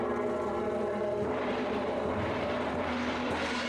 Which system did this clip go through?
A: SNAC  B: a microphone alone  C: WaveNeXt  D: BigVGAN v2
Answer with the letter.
D